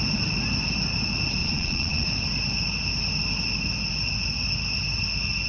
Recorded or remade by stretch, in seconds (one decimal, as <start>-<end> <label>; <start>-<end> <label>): 0.0-1.4 recorded; 1.4-2.1 remade; 2.1-5.5 recorded